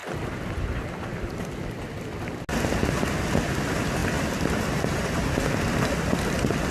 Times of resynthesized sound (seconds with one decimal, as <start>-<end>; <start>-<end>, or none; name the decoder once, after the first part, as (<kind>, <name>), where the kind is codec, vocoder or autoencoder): none